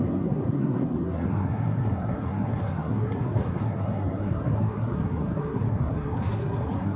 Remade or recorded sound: remade